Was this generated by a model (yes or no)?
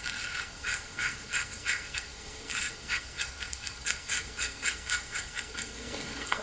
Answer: yes